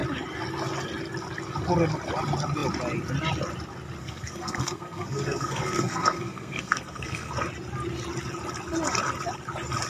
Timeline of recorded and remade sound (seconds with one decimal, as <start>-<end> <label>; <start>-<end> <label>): 0.0-4.0 recorded; 4.0-7.3 remade; 7.3-9.9 recorded